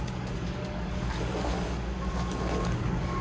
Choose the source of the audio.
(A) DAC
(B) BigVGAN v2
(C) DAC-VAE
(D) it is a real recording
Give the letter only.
A